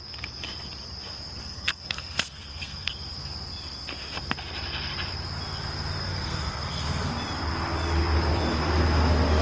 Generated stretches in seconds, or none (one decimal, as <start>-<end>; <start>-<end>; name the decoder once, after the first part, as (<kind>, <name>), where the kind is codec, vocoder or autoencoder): 1.4-2.9 (codec, SNAC); 6.0-7.1